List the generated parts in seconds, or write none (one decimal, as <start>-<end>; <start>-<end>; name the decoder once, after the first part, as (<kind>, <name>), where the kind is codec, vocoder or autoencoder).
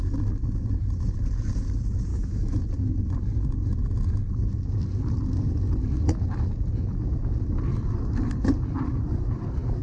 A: 2.1-2.6 (autoencoder, DAC-VAE)